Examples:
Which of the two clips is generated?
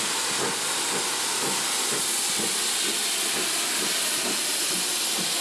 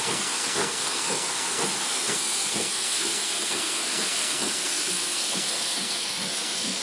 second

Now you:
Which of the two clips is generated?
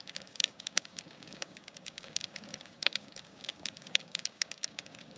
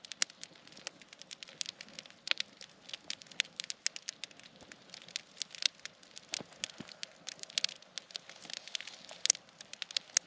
first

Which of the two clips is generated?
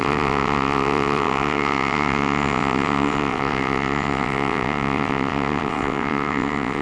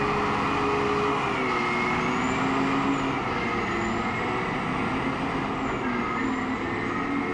first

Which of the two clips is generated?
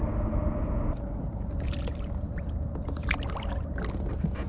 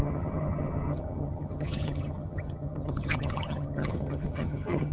second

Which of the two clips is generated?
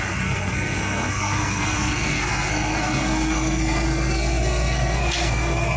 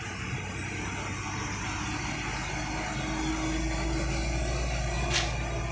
first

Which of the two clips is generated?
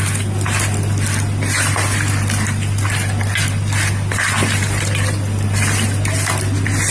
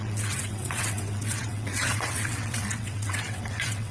second